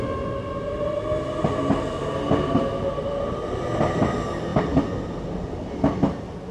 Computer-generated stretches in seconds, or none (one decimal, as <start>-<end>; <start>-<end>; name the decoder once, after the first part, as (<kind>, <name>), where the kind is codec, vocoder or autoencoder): none